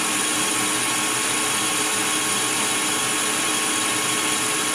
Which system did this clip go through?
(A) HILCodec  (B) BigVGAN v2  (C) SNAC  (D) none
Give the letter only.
D